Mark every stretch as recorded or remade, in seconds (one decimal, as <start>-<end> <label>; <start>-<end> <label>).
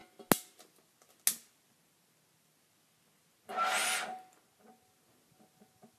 0.0-6.0 recorded